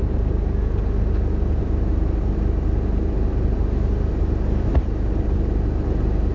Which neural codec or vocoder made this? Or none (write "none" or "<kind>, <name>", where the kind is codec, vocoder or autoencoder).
none